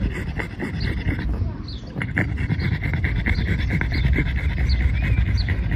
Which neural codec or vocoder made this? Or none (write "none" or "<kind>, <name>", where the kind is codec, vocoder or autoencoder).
none